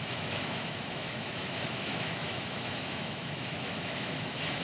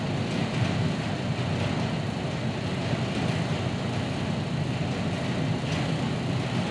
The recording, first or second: second